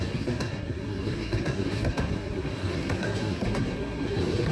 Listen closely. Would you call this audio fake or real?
fake